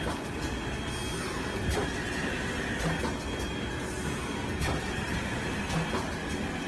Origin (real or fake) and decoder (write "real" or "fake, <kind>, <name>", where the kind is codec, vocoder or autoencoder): real